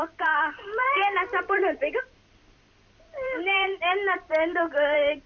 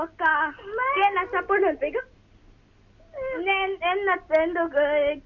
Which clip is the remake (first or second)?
first